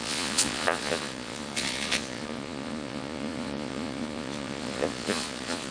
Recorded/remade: remade